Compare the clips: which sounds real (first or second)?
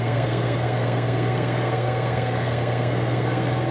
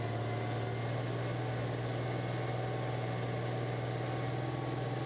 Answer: second